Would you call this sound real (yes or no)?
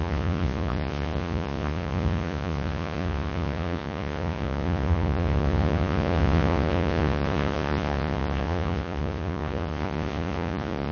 no